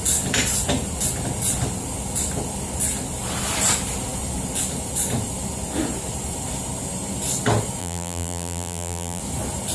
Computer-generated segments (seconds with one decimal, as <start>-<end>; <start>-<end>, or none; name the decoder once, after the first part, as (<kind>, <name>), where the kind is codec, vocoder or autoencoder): 7.8-9.2 (vocoder, BigVGAN v2)